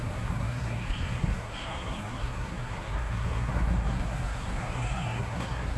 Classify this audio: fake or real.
fake